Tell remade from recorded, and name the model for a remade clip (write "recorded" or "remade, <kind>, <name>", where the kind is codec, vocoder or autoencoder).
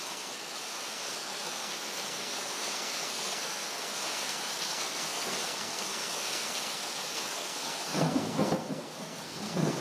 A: remade, codec, SNAC